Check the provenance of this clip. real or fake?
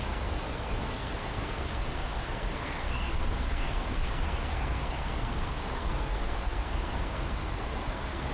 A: fake